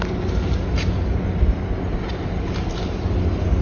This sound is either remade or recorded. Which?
recorded